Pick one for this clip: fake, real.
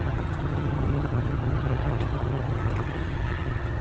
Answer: fake